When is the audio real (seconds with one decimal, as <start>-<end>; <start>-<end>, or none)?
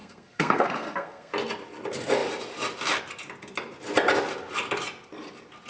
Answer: 1.3-5.7